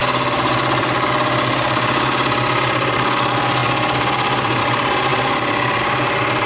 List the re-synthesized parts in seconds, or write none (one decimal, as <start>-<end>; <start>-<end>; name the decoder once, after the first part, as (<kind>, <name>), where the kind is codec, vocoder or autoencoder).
none